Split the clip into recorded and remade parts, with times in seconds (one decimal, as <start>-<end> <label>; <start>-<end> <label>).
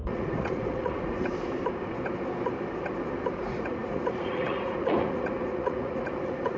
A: 0.0-1.3 remade; 1.3-3.4 recorded; 3.4-6.6 remade